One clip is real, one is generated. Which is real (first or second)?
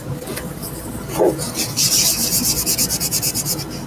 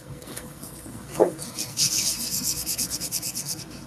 first